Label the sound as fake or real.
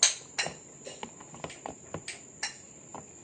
real